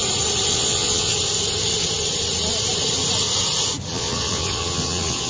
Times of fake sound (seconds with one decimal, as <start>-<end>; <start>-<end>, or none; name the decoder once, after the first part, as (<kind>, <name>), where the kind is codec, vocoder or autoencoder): 0.5-1.1 (vocoder, Vocos); 3.9-5.3